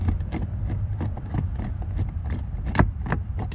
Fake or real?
real